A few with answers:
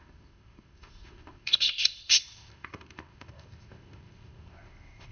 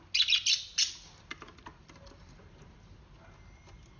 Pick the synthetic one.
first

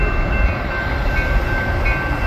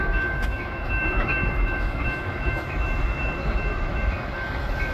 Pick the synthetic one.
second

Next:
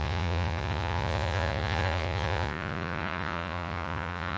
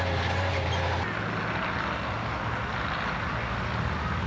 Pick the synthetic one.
first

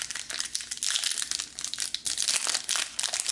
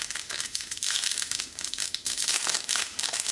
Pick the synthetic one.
second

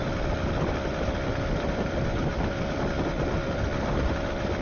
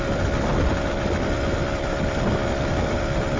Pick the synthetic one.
first